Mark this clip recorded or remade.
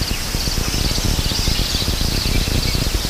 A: recorded